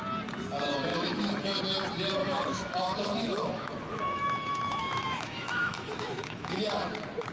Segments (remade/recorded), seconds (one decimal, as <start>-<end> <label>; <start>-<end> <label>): 0.0-0.9 recorded; 0.9-1.6 remade; 1.6-2.2 recorded; 2.2-6.6 remade; 6.6-7.3 recorded